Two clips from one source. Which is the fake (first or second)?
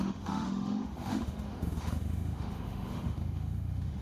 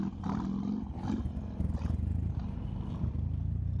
first